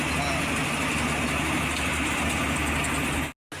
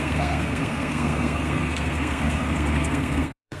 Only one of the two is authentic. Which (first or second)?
first